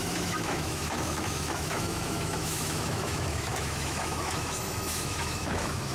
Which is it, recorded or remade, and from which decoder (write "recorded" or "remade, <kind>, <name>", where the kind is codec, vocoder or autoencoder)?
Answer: remade, autoencoder, DAC-VAE